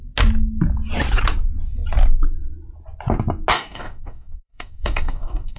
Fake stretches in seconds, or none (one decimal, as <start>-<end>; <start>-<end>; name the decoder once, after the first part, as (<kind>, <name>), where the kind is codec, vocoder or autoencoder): 3.5-5.6 (codec, DAC)